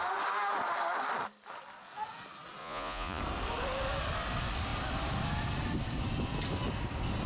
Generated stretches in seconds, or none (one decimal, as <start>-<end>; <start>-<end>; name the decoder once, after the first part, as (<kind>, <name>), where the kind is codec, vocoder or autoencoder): 2.6-3.2 (vocoder, Vocos)